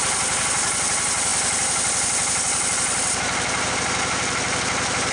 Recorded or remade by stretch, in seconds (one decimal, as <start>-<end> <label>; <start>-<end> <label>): 0.0-5.1 recorded